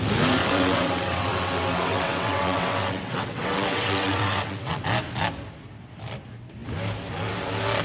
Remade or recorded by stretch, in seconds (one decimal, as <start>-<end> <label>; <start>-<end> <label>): 0.0-0.4 recorded; 0.4-4.8 remade; 4.8-7.8 recorded